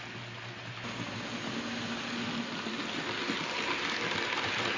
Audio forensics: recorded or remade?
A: recorded